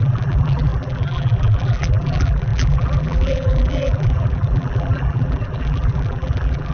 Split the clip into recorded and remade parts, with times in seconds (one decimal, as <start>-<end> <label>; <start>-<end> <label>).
0.0-6.7 remade